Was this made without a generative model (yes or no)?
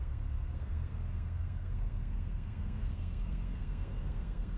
no